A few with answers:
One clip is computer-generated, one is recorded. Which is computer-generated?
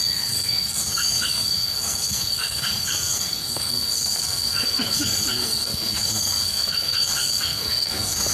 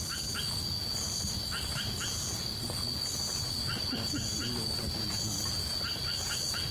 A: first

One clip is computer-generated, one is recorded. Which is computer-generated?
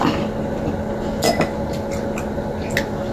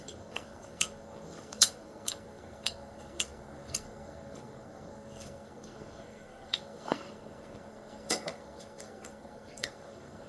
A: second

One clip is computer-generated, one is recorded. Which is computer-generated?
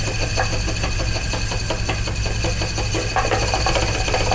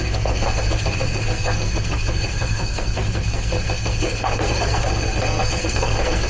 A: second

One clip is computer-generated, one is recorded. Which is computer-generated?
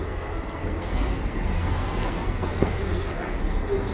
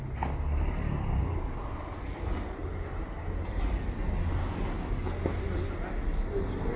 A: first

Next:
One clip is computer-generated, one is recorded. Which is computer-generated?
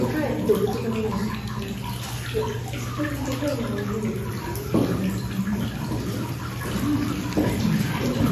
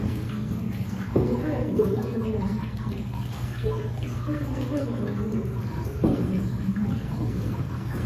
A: second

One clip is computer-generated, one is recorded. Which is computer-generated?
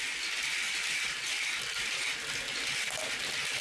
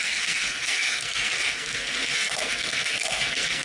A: second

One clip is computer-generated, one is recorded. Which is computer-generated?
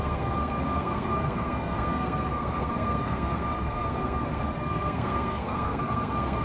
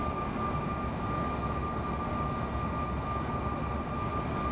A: first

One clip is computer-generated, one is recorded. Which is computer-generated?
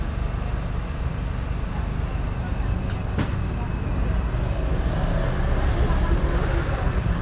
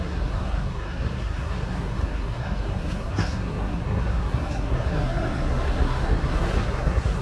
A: second